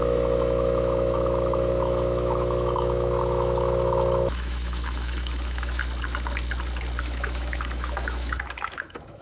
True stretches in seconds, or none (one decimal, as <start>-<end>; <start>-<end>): 5.8-7.0